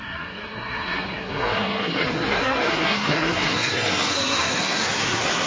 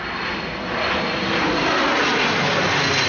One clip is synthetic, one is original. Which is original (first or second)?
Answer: second